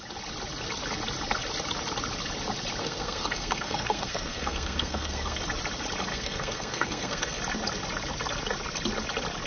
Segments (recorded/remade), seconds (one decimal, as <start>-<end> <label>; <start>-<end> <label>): 0.0-2.8 recorded; 2.8-5.4 remade; 5.4-6.1 recorded; 6.1-7.4 remade; 7.4-9.5 recorded